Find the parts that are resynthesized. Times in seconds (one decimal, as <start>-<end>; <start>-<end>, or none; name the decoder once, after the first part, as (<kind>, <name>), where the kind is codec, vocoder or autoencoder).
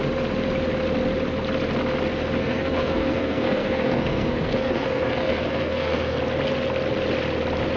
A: 2.4-6.2 (codec, SNAC)